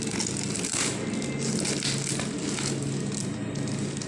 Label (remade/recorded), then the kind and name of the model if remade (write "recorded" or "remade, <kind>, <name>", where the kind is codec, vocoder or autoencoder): recorded